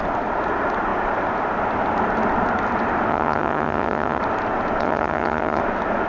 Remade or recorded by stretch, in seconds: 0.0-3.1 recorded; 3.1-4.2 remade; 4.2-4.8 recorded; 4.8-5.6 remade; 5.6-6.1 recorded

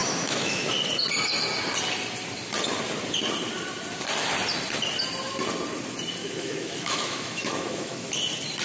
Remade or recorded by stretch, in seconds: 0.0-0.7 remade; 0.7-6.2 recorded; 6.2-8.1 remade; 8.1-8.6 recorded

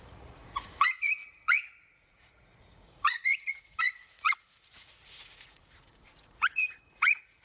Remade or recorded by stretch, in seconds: 0.0-7.4 remade